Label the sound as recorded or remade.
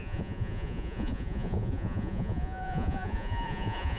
remade